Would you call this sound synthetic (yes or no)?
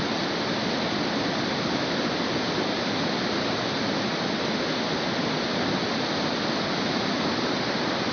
no